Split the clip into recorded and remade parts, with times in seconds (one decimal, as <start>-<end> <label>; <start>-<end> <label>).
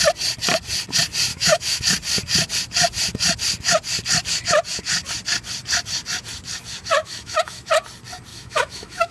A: 0.0-1.3 recorded; 1.3-1.8 remade; 1.8-7.0 recorded; 7.0-7.7 remade; 7.7-8.3 recorded; 8.3-9.1 remade